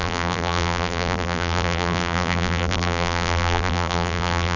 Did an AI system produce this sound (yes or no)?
yes